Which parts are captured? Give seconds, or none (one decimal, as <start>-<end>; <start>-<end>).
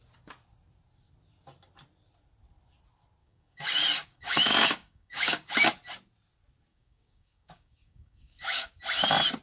0.0-3.2; 5.5-6.7; 8.8-9.4